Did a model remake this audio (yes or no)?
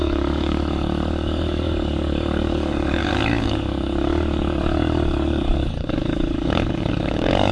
yes